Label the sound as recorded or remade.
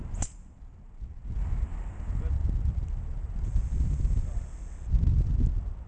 recorded